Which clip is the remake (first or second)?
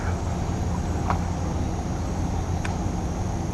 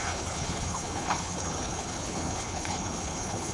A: second